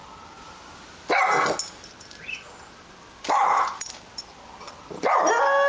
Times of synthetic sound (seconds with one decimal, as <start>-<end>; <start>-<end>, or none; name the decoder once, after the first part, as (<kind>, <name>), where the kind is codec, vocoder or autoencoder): none

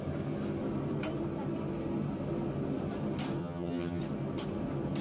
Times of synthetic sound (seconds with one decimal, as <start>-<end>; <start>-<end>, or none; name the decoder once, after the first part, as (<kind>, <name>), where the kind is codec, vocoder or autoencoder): 3.4-4.0 (vocoder, HiFi-GAN)